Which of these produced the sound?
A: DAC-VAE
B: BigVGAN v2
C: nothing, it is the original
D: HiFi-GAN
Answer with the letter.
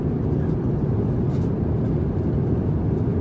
C